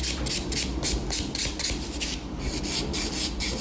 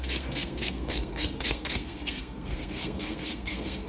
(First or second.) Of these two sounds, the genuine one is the first